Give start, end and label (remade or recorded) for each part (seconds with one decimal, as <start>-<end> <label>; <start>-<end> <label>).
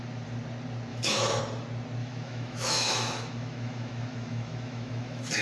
0.0-0.9 recorded; 0.9-1.4 remade; 1.4-2.0 recorded; 2.0-5.4 remade